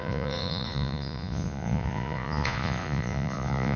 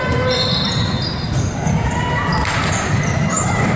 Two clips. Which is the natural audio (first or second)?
second